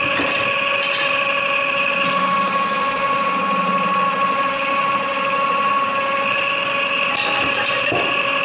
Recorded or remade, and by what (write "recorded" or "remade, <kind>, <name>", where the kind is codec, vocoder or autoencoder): remade, vocoder, BigVGAN v2